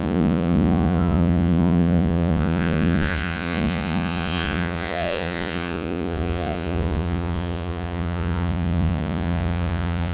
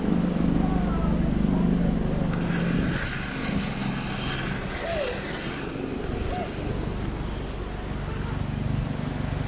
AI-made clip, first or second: first